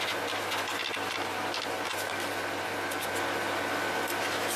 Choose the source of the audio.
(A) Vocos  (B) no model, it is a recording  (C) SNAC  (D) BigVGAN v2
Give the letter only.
B